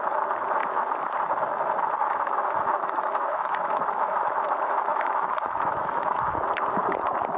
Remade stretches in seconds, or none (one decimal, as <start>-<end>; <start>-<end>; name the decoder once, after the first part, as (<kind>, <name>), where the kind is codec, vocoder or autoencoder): 2.0-6.4 (autoencoder, DAC-VAE)